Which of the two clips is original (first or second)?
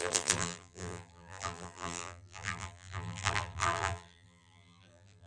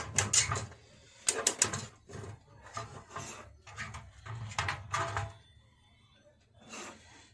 second